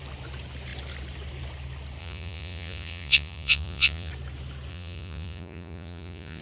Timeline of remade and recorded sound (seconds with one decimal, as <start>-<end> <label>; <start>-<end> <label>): 0.0-2.0 recorded; 2.0-4.1 remade; 4.1-4.7 recorded; 4.7-6.4 remade